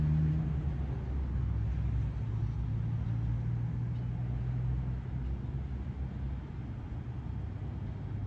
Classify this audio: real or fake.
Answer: real